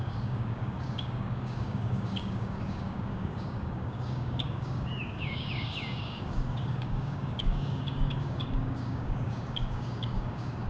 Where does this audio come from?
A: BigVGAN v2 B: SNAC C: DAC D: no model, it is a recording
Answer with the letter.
C